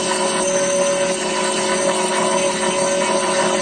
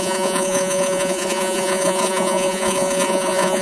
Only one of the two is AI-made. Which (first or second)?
second